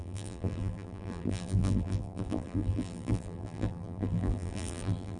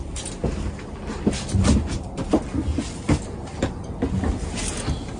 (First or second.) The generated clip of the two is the first